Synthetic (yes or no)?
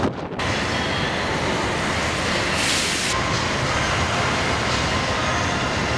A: no